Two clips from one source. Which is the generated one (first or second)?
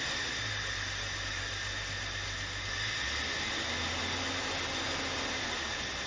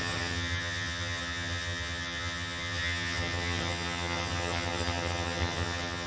second